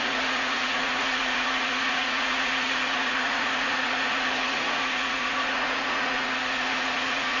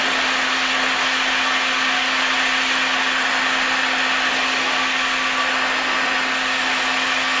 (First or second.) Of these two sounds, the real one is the second